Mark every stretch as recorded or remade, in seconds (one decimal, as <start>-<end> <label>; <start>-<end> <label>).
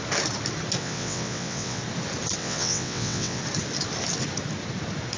0.0-0.8 recorded; 0.8-1.8 remade; 1.8-2.4 recorded; 2.4-3.4 remade; 3.4-5.2 recorded